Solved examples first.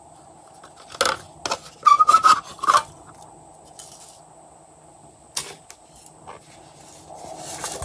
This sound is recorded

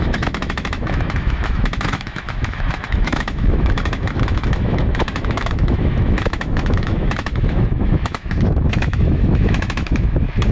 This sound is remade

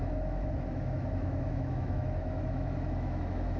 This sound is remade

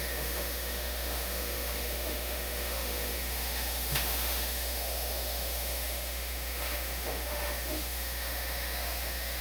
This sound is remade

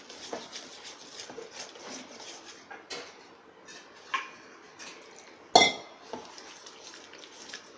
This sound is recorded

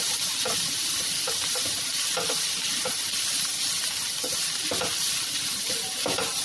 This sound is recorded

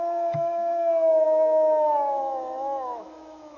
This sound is remade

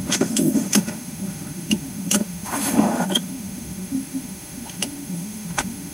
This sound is remade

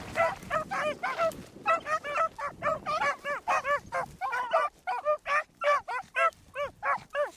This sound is recorded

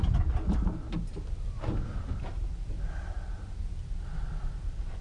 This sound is recorded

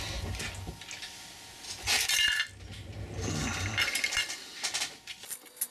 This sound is recorded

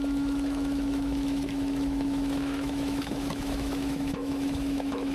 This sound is remade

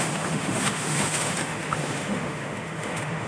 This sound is remade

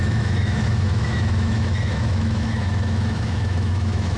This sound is remade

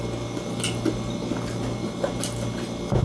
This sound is recorded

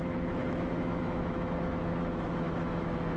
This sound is remade